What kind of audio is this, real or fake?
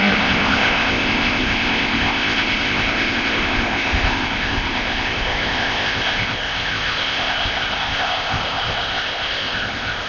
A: fake